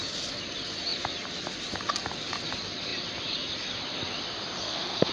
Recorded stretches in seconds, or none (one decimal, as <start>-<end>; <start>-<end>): 0.0-4.6